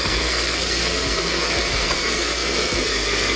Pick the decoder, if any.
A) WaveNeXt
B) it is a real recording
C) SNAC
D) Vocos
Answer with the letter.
C